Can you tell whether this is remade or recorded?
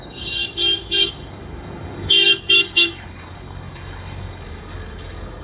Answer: remade